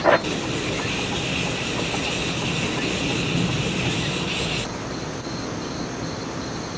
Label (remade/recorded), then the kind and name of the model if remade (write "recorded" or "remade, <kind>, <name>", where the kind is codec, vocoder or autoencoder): recorded